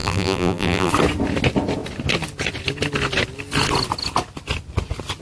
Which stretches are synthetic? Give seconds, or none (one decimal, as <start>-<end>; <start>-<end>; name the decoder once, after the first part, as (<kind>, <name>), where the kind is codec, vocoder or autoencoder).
0.0-0.9 (vocoder, BigVGAN v2)